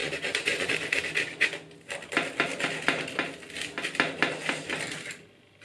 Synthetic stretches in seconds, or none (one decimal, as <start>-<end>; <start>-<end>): 0.0-0.7